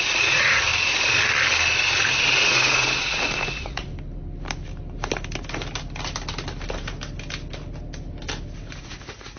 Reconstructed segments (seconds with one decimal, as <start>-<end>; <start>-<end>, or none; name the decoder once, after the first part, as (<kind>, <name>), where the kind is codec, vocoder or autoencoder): 0.0-0.7 (vocoder, Vocos); 2.1-3.9; 8.8-9.4

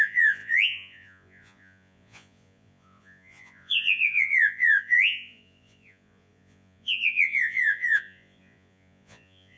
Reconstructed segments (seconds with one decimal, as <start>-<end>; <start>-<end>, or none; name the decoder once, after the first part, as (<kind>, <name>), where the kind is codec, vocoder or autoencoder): 0.0-9.6 (vocoder, Vocos)

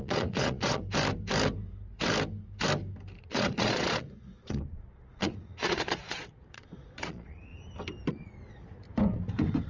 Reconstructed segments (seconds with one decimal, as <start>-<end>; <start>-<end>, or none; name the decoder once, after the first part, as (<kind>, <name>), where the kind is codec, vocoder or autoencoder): 0.0-0.8 (vocoder, Vocos); 3.2-7.5; 8.1-8.8

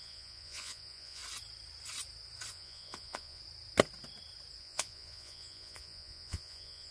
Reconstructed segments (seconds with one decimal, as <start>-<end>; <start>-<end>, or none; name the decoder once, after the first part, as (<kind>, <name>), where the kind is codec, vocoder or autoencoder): 0.0-1.2 (vocoder, Vocos); 2.5-3.4; 4.6-6.9

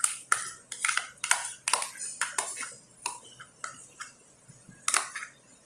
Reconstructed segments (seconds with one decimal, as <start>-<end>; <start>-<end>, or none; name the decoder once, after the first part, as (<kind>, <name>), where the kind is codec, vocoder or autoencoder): none

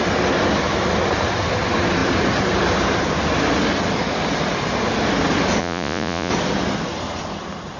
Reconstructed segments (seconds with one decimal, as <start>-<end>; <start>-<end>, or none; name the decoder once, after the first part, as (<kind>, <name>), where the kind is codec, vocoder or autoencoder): 5.6-6.3 (vocoder, Vocos)

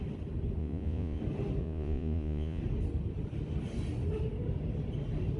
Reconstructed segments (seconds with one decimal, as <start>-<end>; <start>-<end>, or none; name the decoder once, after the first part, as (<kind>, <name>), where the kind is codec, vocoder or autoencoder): 0.6-1.2 (vocoder, Vocos); 1.6-2.6

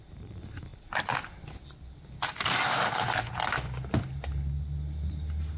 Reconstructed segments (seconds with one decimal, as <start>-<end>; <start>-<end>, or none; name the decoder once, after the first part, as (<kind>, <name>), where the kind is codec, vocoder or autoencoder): none